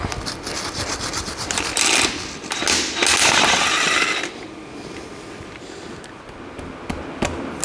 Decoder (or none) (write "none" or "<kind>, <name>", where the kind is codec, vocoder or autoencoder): none